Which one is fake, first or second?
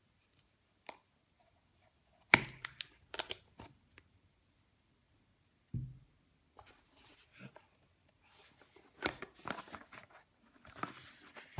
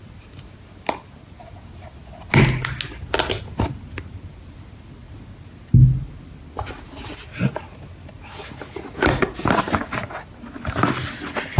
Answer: first